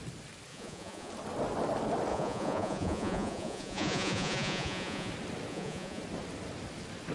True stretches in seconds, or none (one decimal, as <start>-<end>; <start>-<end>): 0.0-0.5; 1.1-2.1; 5.1-5.5; 6.0-7.1